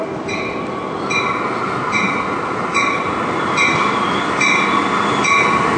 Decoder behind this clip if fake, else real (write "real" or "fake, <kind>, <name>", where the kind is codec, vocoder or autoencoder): real